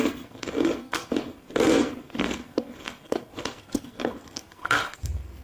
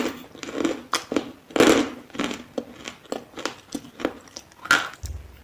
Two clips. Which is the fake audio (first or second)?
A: first